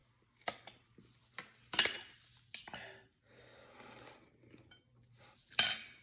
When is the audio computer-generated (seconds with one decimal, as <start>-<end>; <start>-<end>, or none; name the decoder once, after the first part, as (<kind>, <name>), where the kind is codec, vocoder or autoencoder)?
none